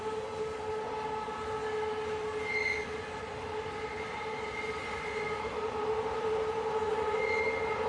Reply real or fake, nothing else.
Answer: real